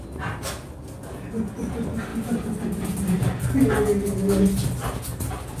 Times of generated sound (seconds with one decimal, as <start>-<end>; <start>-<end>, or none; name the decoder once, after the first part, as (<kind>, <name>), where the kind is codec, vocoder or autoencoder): none